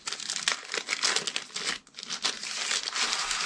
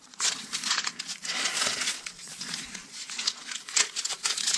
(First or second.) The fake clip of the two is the second